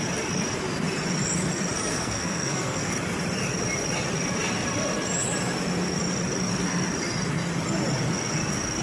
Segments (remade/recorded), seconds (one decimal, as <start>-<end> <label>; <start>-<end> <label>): 0.0-1.9 recorded; 1.9-2.9 remade; 2.9-8.8 recorded